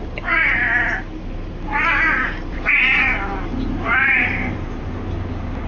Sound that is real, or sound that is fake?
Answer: real